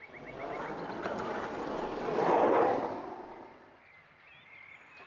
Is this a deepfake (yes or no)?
no